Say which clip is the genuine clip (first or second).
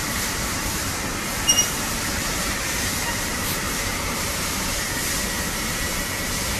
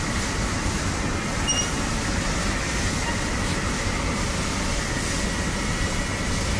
second